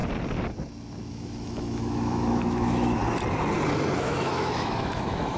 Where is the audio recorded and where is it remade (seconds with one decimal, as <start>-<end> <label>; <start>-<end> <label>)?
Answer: 0.0-1.1 recorded; 1.1-3.0 remade; 3.0-4.0 recorded; 4.0-5.4 remade